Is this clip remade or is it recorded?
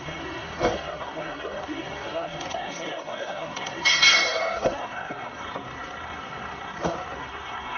remade